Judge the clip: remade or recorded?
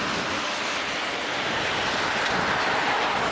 recorded